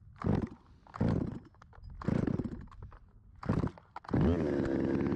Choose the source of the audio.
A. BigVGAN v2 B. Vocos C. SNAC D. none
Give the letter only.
D